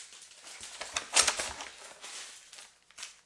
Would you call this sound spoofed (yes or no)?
no